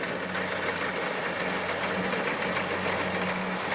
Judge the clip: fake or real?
real